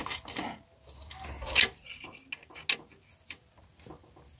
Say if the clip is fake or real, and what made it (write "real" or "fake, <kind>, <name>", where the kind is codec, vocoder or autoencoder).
real